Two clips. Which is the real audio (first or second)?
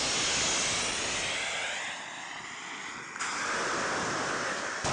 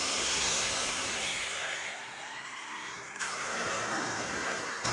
first